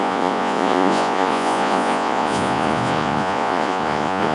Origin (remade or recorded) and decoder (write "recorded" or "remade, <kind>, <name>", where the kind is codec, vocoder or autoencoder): remade, vocoder, Vocos